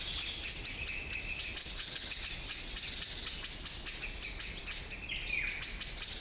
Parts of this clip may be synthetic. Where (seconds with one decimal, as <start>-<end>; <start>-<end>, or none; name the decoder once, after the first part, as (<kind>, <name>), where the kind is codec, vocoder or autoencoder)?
1.6-2.2 (codec, HILCodec)